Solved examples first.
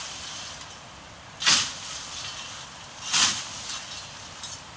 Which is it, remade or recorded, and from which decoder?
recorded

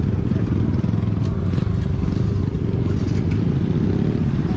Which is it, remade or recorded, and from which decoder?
recorded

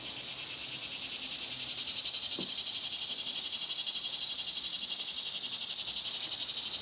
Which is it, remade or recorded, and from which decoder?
recorded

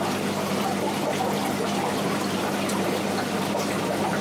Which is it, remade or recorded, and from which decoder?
recorded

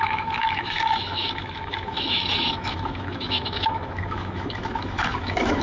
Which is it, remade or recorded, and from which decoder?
remade, autoencoder, DAC-VAE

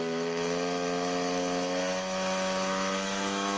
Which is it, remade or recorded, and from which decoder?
remade, autoencoder, DAC-VAE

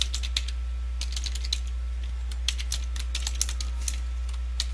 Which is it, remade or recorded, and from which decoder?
recorded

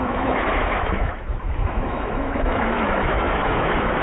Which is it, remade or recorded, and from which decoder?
remade, autoencoder, DAC-VAE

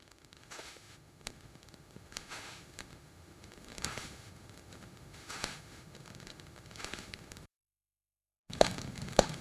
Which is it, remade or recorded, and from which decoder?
remade, autoencoder, DAC-VAE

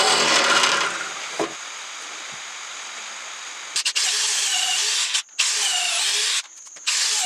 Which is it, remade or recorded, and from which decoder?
recorded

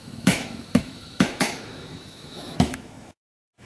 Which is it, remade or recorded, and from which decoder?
remade, autoencoder, DAC-VAE